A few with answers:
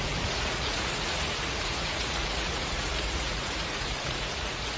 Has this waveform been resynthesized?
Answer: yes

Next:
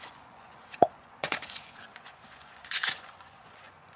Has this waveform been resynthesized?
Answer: yes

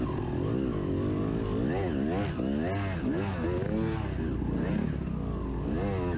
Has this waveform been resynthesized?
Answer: no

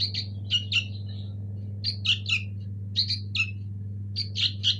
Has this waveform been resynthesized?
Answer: no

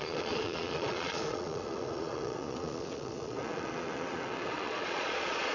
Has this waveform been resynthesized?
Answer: yes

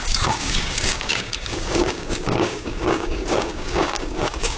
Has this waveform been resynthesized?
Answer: yes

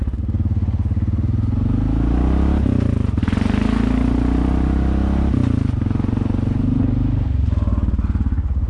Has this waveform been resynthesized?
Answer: no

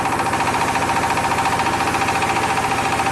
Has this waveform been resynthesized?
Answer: no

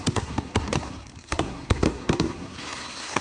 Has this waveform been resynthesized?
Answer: yes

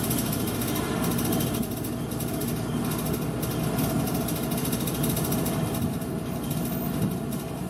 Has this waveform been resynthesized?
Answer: no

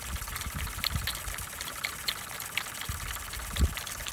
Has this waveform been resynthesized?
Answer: no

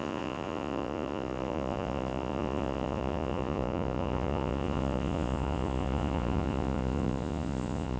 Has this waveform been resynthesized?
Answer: yes